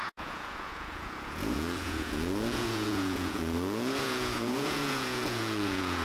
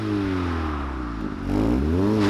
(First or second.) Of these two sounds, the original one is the second